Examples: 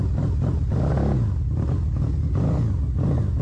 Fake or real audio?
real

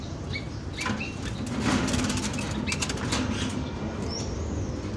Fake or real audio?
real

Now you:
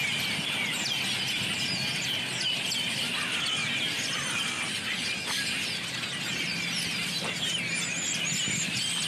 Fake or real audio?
real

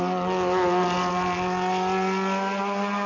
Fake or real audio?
real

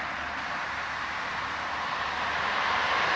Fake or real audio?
real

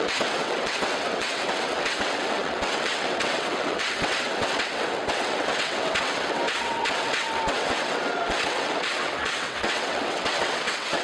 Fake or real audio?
fake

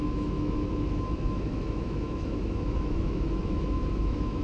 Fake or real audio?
fake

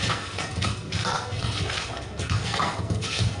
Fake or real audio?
fake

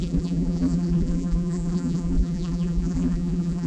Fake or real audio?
fake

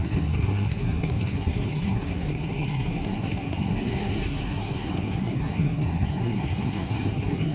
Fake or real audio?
fake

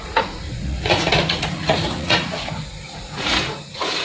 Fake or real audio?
fake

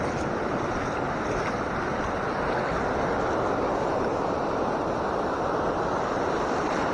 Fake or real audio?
real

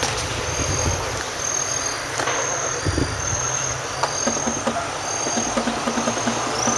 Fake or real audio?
real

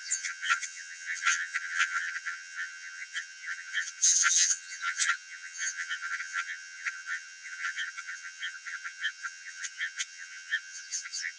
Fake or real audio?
fake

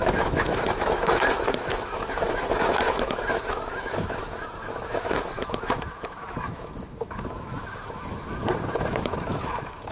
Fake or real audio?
fake